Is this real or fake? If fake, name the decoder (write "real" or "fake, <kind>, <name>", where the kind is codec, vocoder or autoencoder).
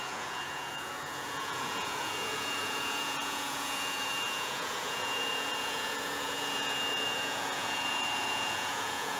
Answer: fake, vocoder, Vocos